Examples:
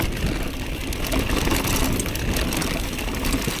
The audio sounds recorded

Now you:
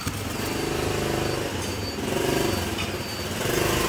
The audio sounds recorded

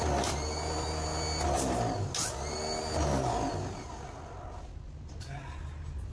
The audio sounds recorded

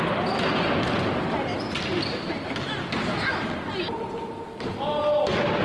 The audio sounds recorded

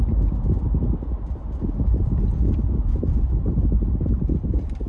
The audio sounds recorded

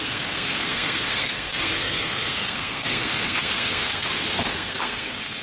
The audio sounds remade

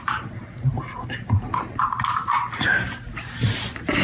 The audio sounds remade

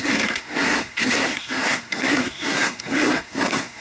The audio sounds remade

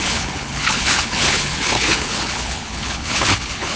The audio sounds remade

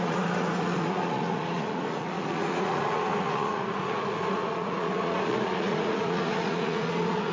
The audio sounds remade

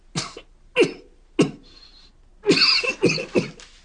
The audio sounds recorded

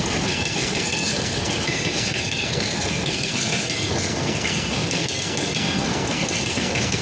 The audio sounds remade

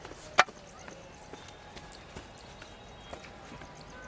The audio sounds recorded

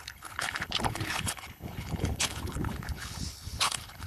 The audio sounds remade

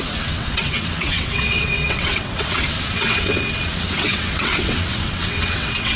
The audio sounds remade